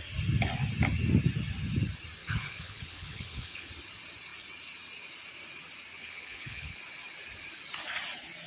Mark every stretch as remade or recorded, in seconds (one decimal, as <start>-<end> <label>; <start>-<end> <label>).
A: 0.0-2.2 recorded; 2.2-3.7 remade; 3.7-6.0 recorded; 6.0-6.8 remade; 6.8-8.5 recorded